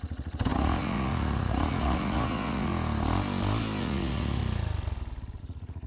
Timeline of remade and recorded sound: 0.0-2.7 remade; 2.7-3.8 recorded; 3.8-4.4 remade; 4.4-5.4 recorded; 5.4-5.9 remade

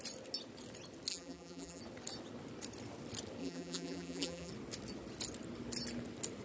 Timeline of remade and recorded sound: 0.0-1.1 recorded; 1.1-1.8 remade; 1.8-3.4 recorded; 3.4-4.5 remade; 4.5-6.4 recorded

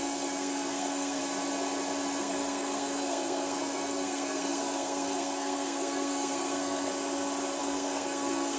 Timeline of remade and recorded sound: 0.0-1.2 remade; 1.2-2.2 recorded; 2.2-6.9 remade; 6.9-7.6 recorded; 7.6-8.6 remade

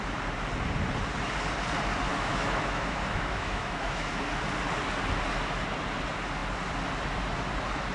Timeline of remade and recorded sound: 0.0-2.1 recorded; 2.1-4.2 remade; 4.2-7.9 recorded